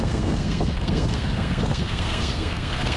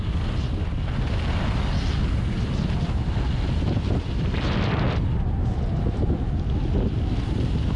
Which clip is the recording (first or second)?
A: second